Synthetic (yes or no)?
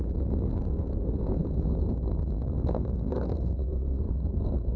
yes